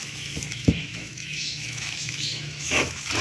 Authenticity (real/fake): fake